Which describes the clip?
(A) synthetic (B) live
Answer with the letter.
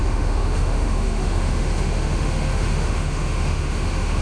A